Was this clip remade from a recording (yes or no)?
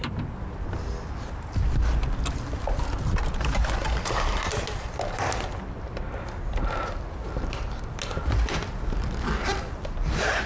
no